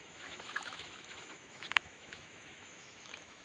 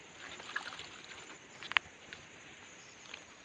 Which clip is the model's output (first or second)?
first